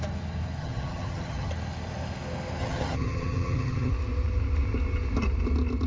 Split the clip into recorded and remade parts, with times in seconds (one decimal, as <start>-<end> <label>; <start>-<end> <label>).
0.0-0.6 recorded; 0.6-1.5 remade; 1.5-2.6 recorded; 2.6-3.9 remade; 3.9-5.9 recorded